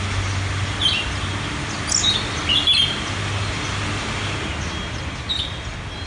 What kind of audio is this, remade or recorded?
recorded